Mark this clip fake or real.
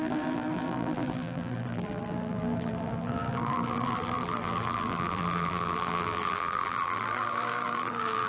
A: fake